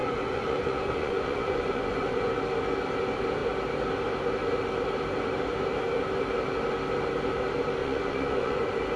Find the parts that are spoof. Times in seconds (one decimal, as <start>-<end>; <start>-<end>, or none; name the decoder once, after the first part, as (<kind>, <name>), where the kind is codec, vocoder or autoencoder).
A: 0.0-2.3 (vocoder, Vocos); 7.8-8.6